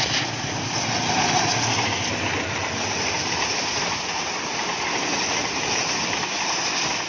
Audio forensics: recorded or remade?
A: recorded